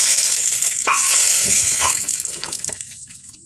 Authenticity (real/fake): fake